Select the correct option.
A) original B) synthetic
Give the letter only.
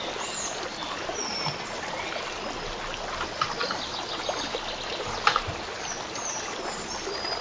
A